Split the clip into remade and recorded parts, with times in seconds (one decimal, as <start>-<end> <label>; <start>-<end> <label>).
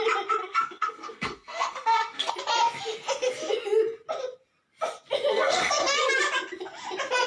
0.0-0.4 recorded; 0.4-2.3 remade; 2.3-5.3 recorded; 5.3-6.1 remade; 6.1-7.3 recorded